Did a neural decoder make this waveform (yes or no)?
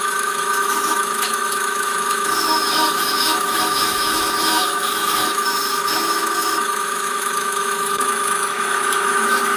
yes